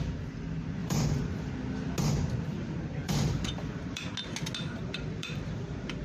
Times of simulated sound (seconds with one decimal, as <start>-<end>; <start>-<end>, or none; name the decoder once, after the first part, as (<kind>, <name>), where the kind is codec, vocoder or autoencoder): 0.8-1.5 (vocoder, BigVGAN v2); 2.5-4.1; 4.8-6.0